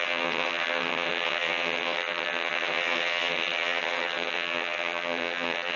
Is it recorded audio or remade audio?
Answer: remade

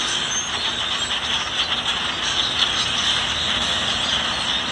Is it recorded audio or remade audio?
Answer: recorded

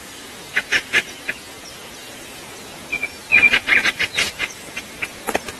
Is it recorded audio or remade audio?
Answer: remade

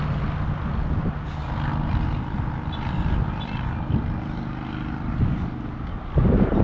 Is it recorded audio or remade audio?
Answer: recorded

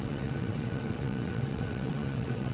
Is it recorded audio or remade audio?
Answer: remade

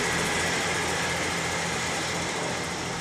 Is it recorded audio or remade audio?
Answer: recorded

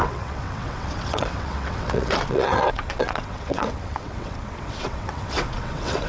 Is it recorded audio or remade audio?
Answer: remade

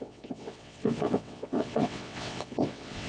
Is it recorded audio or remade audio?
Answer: remade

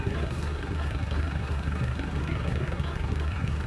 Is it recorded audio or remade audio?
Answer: remade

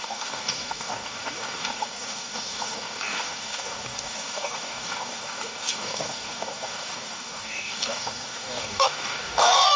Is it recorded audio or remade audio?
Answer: remade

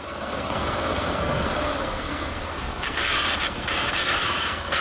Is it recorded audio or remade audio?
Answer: remade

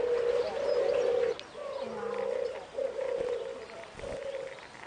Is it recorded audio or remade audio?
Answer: recorded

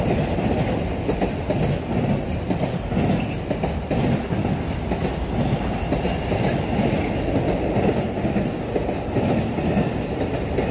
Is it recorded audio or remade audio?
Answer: recorded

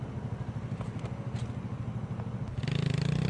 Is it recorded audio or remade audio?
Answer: recorded